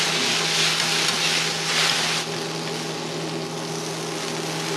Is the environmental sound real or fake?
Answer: real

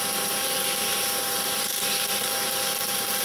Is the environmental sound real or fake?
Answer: fake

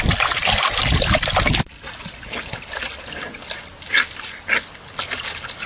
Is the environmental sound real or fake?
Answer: real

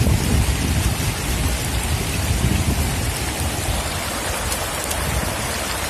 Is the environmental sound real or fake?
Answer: fake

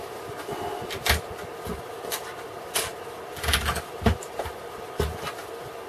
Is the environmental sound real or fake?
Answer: real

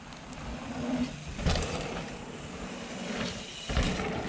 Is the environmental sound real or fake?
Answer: real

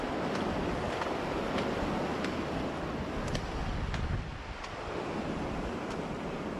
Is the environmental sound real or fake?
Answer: real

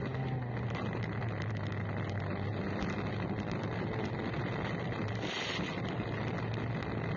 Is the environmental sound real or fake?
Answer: real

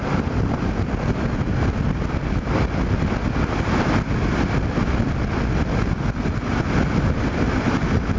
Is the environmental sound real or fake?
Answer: real